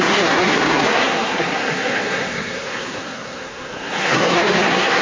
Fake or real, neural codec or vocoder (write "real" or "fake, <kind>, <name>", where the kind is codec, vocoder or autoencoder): fake, codec, SNAC